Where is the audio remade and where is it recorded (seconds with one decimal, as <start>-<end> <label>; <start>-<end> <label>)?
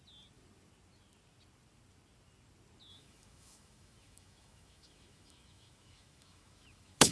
0.0-2.9 recorded; 2.9-7.1 remade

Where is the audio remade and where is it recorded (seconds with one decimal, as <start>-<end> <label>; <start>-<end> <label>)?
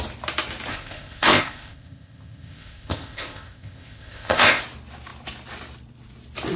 0.0-0.7 recorded; 0.7-4.6 remade; 4.6-6.6 recorded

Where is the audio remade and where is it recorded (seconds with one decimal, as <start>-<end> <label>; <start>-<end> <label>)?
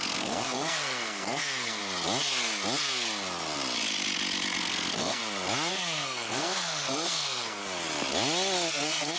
0.0-1.8 remade; 1.8-4.6 recorded; 4.6-5.2 remade; 5.2-5.7 recorded; 5.7-7.6 remade; 7.6-8.7 recorded; 8.7-9.2 remade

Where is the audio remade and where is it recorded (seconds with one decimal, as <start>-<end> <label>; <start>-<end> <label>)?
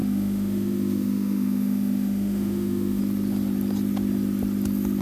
0.0-3.0 remade; 3.0-5.0 recorded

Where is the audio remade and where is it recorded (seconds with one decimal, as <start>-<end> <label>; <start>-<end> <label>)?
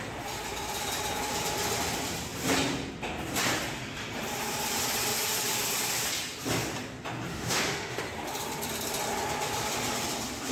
0.0-7.3 recorded; 7.3-8.0 remade; 8.0-10.5 recorded